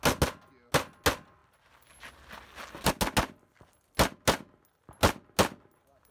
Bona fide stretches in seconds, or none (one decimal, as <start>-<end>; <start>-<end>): 0.0-6.1